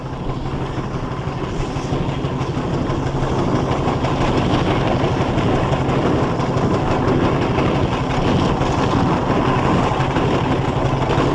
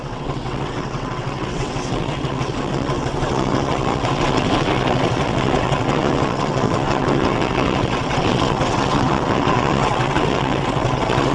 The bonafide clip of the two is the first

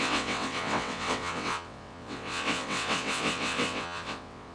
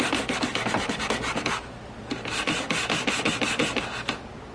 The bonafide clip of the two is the second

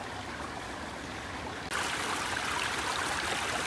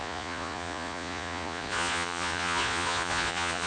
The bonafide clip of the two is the first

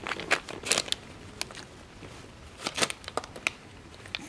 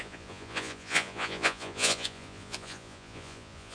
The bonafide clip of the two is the first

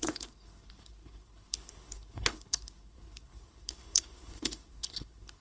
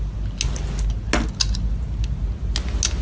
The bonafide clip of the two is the second